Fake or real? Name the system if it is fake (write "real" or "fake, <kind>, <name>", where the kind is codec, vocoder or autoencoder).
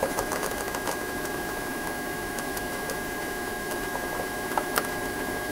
fake, autoencoder, DAC-VAE